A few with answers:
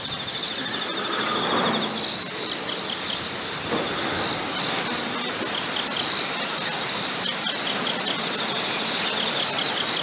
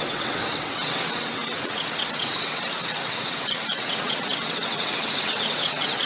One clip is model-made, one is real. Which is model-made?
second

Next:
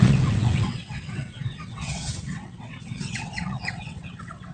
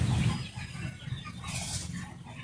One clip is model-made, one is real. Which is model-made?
first